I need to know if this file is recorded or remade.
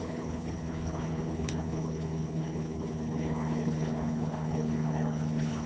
remade